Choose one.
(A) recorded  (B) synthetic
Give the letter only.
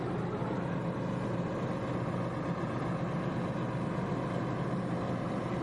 A